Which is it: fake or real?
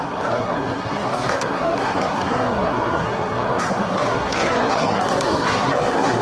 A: fake